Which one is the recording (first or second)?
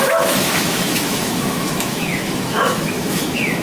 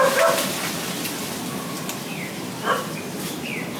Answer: second